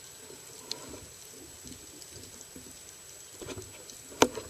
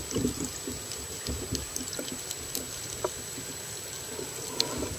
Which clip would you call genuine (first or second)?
second